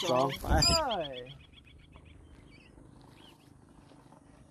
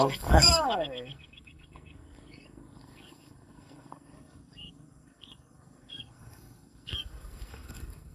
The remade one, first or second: second